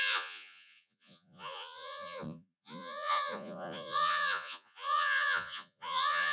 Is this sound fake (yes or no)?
yes